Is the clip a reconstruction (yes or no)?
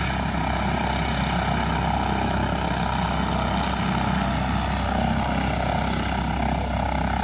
no